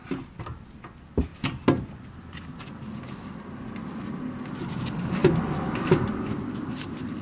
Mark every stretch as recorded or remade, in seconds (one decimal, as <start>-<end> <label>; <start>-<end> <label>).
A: 0.0-7.2 recorded